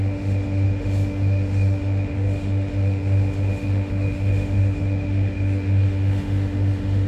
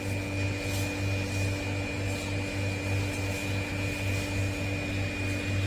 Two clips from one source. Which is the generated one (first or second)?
first